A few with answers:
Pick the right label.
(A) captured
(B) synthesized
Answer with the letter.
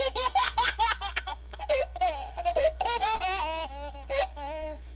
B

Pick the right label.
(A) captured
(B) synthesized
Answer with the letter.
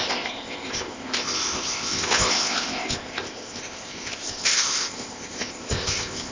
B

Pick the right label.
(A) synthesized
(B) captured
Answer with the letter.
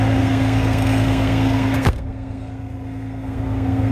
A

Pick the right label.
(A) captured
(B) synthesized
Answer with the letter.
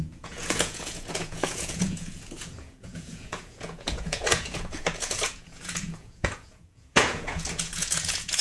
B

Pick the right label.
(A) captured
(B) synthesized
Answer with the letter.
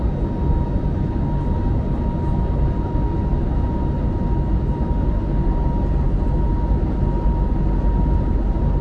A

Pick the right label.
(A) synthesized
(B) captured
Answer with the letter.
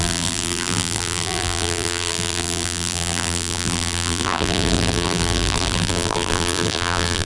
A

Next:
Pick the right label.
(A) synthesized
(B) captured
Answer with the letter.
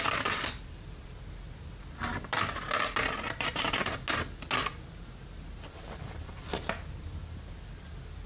B